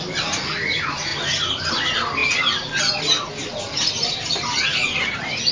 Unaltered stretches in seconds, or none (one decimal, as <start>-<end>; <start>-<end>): 0.0-5.5